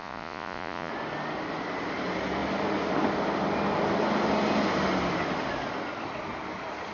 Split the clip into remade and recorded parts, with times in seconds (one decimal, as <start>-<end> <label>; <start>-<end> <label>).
0.0-0.9 remade; 0.9-6.9 recorded